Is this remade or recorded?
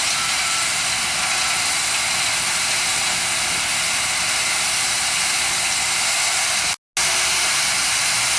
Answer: recorded